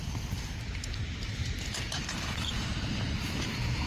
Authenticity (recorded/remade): remade